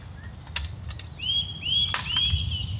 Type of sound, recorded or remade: recorded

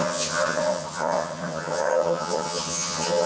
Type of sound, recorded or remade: remade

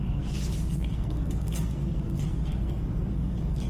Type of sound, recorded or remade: remade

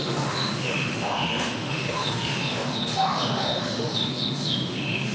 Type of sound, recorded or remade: remade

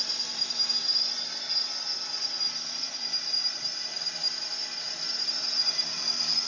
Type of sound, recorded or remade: recorded